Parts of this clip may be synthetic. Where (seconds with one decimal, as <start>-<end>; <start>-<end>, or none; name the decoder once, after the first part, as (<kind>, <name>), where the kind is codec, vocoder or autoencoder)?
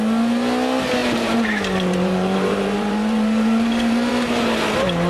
1.0-4.1 (vocoder, BigVGAN v2)